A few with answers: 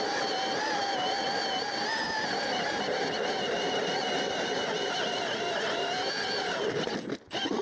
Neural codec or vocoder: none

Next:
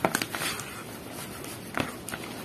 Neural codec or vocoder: none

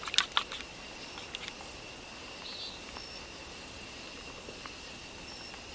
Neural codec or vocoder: none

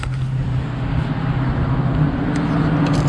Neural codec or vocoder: none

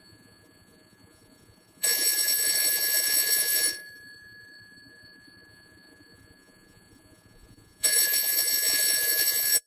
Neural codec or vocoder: vocoder, Vocos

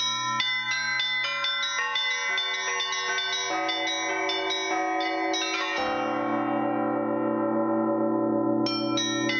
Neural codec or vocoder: none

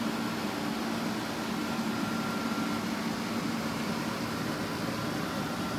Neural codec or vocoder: none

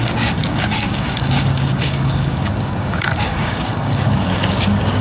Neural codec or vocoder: codec, DAC